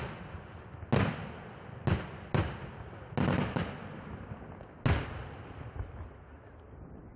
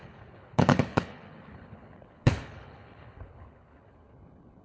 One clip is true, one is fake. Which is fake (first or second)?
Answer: second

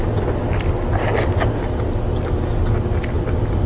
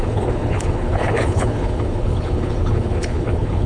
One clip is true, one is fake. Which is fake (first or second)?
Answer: second